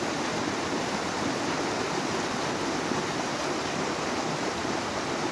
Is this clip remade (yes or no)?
no